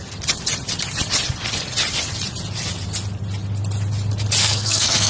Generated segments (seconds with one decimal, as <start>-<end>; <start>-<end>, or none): 4.4-5.1